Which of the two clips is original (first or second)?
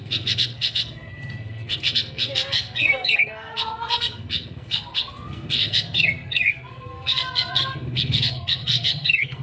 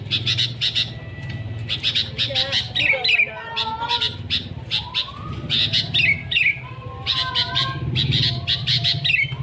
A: second